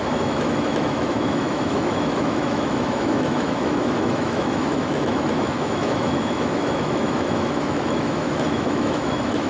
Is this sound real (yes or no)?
no